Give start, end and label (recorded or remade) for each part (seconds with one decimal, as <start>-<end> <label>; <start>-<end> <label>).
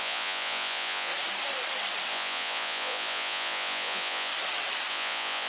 0.0-1.1 remade; 1.1-2.1 recorded; 2.1-4.3 remade; 4.3-4.9 recorded; 4.9-5.5 remade